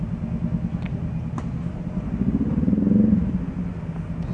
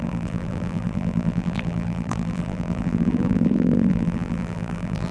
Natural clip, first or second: first